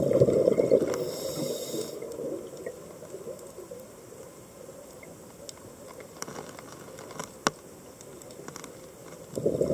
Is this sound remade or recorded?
recorded